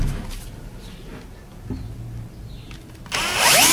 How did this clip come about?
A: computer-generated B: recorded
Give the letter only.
B